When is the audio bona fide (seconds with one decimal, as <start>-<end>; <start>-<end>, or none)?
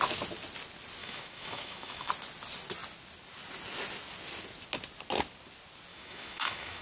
0.0-1.0; 2.1-5.9